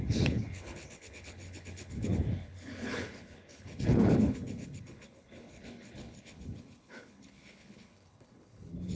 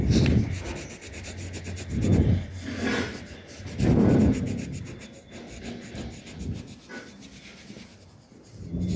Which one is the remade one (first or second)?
first